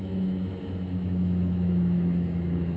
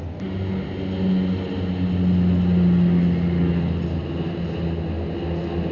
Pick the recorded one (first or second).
second